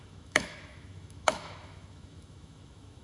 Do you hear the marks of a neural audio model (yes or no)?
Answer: yes